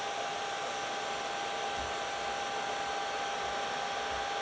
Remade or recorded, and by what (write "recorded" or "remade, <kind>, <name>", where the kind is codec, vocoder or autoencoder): recorded